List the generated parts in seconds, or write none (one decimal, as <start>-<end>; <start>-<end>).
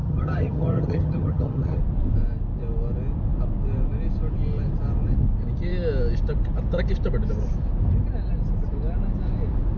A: 0.0-1.8